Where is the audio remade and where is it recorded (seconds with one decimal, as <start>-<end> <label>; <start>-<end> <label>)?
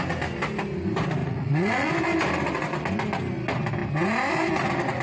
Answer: 0.0-1.2 recorded; 1.2-1.9 remade; 1.9-5.0 recorded